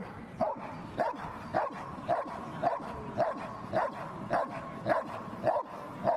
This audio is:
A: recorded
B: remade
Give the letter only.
A